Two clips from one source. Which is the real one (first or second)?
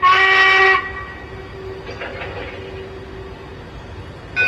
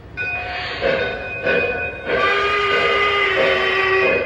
first